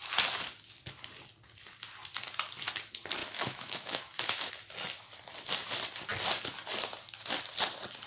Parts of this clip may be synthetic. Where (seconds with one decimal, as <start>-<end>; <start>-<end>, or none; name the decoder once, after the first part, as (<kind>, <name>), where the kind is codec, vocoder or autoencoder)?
3.2-4.5 (autoencoder, DAC-VAE)